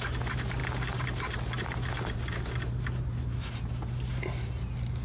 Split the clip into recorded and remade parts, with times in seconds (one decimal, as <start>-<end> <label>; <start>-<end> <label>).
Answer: 0.0-5.0 recorded